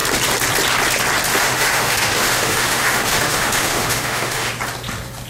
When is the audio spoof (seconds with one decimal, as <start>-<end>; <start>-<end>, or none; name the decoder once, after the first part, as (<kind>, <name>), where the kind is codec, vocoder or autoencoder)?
1.3-4.5 (autoencoder, DAC-VAE)